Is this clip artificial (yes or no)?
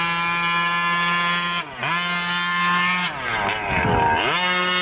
no